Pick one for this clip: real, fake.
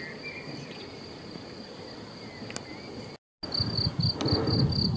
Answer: real